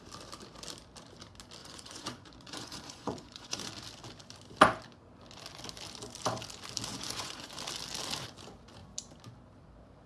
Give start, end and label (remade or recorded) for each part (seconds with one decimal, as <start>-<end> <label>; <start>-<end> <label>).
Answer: 0.0-1.6 recorded; 1.6-3.7 remade; 3.7-6.9 recorded; 6.9-7.5 remade; 7.5-10.1 recorded